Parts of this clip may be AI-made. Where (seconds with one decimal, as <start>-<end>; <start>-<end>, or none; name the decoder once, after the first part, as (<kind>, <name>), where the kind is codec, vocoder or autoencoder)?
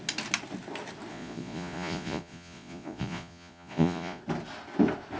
1.1-4.2 (vocoder, Vocos)